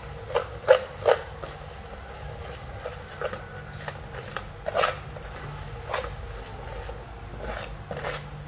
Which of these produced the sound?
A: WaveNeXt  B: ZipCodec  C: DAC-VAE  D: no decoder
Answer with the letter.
D